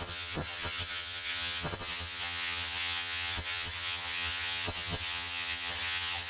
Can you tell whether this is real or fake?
fake